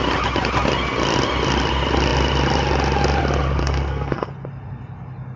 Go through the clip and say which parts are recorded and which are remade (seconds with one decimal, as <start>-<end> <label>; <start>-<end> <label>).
0.0-3.6 recorded; 3.6-4.3 remade; 4.3-5.4 recorded

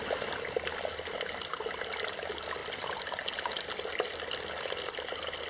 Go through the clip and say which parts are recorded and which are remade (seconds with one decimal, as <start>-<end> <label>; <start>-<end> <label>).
0.0-5.5 recorded

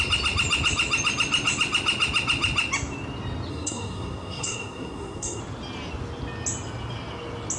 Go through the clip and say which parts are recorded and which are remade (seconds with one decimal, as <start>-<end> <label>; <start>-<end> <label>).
0.0-3.5 recorded; 3.5-5.4 remade; 5.4-7.6 recorded

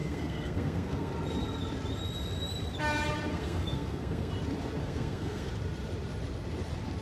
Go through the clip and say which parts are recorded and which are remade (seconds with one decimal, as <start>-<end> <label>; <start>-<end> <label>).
0.0-1.1 remade; 1.1-3.3 recorded; 3.3-4.3 remade; 4.3-4.8 recorded; 4.8-5.5 remade; 5.5-7.0 recorded

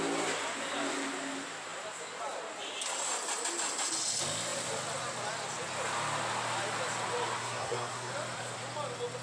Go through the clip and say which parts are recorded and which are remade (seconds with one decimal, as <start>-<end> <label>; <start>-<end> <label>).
0.0-7.4 recorded; 7.4-8.1 remade; 8.1-9.2 recorded

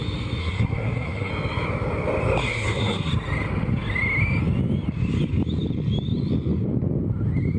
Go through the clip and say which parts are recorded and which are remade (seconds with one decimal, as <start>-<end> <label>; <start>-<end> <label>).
0.0-0.4 recorded; 0.4-1.3 remade; 1.3-2.4 recorded; 2.4-3.1 remade; 3.1-7.6 recorded

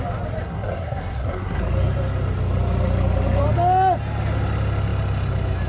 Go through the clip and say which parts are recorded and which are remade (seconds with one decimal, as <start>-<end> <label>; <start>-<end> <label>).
0.0-0.4 recorded; 0.4-1.6 remade; 1.6-5.7 recorded